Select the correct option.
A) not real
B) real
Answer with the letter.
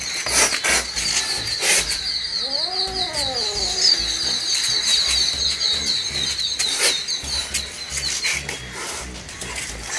B